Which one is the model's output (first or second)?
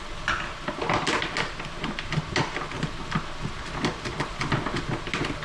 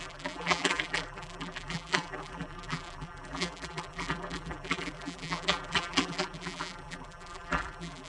second